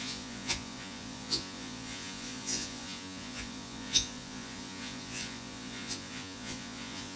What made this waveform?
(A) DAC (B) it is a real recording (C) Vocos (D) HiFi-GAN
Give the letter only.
C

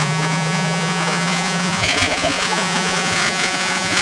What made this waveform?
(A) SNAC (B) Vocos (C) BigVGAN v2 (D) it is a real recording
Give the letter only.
B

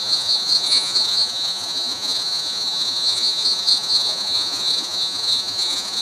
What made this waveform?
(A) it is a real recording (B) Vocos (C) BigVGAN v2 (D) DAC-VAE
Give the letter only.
B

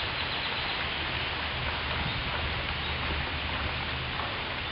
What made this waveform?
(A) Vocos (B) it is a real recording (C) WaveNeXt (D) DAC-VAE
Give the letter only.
B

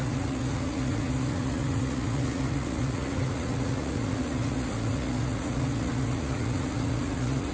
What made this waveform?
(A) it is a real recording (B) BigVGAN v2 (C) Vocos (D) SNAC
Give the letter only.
C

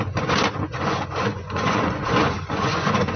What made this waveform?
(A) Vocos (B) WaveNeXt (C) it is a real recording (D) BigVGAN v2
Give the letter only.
A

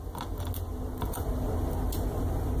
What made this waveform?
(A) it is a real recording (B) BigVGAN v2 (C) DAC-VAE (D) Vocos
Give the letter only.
A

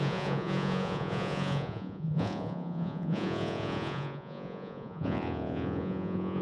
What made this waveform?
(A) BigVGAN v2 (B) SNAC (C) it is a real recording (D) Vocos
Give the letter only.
D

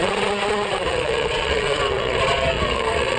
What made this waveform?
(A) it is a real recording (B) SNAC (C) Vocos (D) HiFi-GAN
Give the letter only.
C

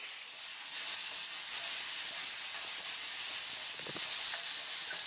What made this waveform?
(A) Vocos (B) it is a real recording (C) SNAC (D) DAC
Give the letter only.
B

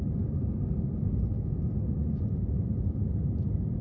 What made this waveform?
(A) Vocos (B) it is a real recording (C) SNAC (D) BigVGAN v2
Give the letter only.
B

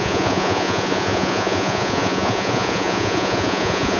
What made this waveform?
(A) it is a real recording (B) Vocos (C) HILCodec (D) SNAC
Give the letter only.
B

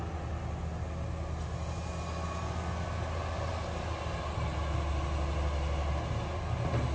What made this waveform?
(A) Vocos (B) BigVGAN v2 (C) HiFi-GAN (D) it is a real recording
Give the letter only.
D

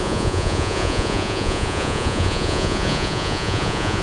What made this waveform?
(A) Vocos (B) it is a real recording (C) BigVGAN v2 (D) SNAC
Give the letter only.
A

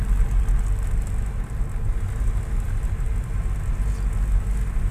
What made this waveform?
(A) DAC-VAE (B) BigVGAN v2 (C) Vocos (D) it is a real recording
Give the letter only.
D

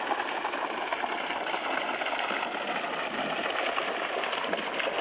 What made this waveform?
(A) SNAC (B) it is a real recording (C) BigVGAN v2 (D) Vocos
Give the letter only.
B